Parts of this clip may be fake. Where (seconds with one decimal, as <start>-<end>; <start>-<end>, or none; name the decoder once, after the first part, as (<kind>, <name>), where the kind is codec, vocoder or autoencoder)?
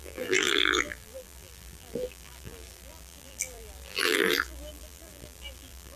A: 0.0-6.0 (vocoder, BigVGAN v2)